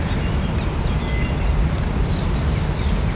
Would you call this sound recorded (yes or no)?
yes